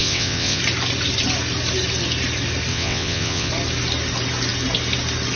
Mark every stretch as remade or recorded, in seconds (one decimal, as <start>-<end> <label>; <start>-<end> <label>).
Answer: 0.0-0.6 remade; 0.6-2.7 recorded; 2.7-3.5 remade; 3.5-5.4 recorded